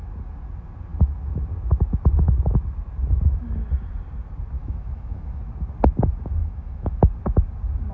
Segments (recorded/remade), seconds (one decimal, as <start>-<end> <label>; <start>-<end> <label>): 0.0-4.6 recorded; 4.6-5.4 remade; 5.4-6.4 recorded; 6.4-7.0 remade; 7.0-7.9 recorded